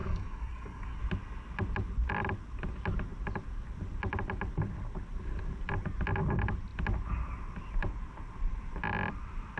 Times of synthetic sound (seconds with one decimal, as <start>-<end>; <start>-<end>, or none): 0.0-1.0